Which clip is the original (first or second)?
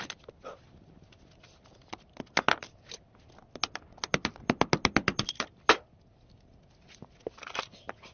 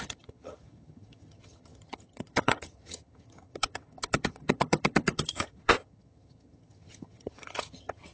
first